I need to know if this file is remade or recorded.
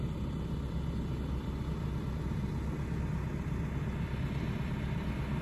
recorded